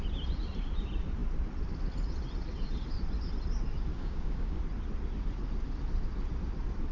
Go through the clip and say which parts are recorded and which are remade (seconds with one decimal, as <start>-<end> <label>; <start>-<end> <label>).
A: 0.0-3.9 recorded; 3.9-4.6 remade; 4.6-6.9 recorded